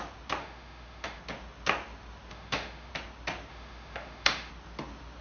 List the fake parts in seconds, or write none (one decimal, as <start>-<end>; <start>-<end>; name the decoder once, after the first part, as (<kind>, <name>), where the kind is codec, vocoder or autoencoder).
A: 0.4-1.2 (autoencoder, DAC-VAE); 2.3-2.9; 3.5-4.5